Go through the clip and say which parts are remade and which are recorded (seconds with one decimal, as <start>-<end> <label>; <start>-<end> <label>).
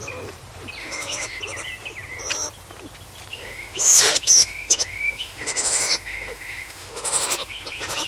0.0-0.8 recorded; 0.8-1.4 remade; 1.4-3.3 recorded; 3.3-8.1 remade